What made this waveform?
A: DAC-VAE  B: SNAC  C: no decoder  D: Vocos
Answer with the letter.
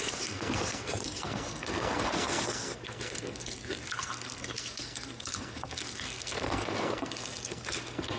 B